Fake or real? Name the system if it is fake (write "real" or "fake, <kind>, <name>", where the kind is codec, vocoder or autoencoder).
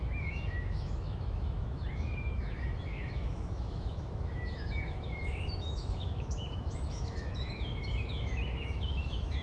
fake, autoencoder, DAC-VAE